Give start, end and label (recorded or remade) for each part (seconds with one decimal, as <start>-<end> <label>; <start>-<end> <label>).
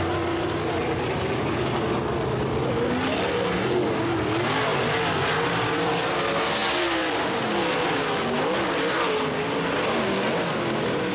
0.0-11.1 recorded